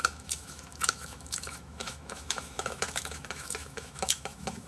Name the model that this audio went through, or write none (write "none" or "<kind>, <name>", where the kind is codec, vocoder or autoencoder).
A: autoencoder, DAC-VAE